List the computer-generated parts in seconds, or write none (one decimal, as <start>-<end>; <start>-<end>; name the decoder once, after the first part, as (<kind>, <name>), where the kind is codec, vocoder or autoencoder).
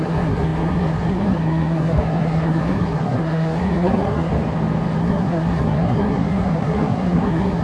0.0-4.3 (codec, SNAC); 5.0-7.6